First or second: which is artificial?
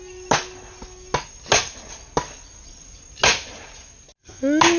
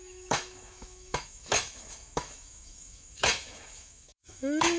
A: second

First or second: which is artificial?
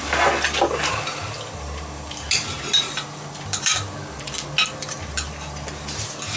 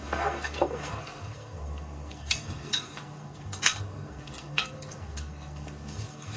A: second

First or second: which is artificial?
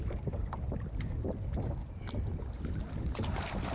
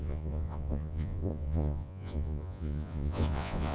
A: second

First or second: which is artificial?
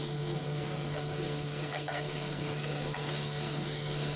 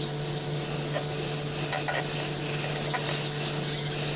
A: first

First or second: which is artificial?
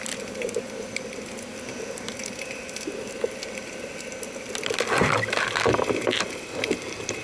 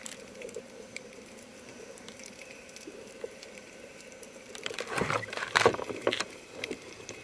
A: second